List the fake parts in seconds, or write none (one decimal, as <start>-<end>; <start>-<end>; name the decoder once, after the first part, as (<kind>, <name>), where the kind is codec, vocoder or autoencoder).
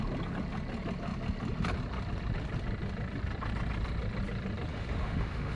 4.7-5.6 (autoencoder, DAC-VAE)